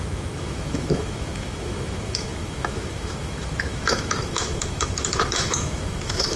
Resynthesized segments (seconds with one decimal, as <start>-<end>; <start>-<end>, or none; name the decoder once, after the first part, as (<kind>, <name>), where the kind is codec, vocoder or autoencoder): 0.0-6.4 (autoencoder, DAC-VAE)